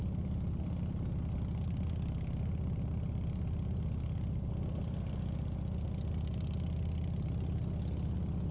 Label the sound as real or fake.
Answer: real